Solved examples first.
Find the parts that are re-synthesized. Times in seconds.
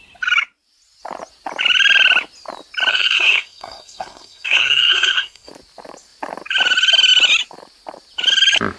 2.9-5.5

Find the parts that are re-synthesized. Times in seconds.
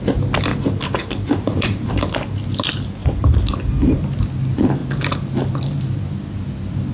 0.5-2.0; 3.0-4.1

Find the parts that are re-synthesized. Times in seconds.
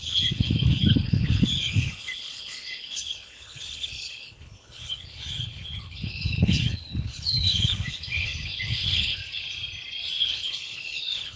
0.0-9.2; 10.2-11.4